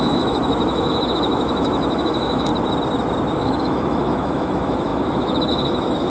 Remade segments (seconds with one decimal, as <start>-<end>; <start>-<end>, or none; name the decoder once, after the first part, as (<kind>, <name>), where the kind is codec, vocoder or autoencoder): 0.0-2.5 (autoencoder, DAC-VAE); 3.3-6.1